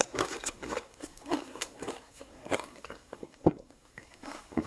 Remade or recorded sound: remade